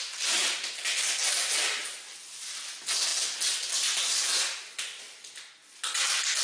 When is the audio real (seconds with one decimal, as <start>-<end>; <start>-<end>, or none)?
0.0-6.4